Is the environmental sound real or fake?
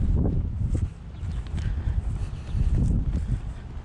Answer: real